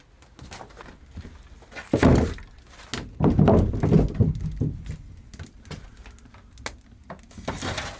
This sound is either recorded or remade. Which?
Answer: recorded